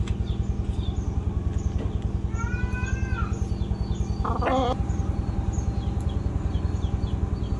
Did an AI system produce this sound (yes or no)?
no